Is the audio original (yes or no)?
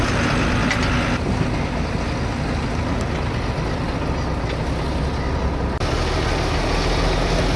yes